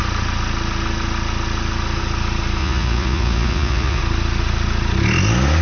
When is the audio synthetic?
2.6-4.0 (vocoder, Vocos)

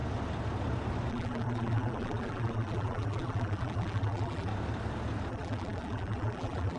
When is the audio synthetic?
1.1-4.5 (vocoder, BigVGAN v2); 5.3-6.8

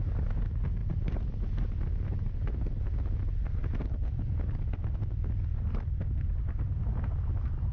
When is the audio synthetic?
none

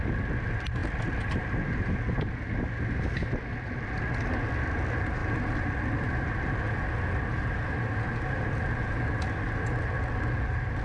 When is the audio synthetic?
none